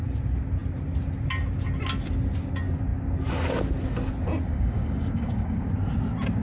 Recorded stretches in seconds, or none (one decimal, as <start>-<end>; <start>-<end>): 0.0-4.5; 5.7-6.4